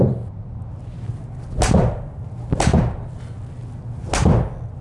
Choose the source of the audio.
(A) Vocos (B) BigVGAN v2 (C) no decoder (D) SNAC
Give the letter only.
C